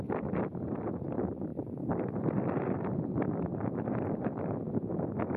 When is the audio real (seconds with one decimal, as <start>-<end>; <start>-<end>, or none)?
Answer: 0.0-1.5; 4.7-5.4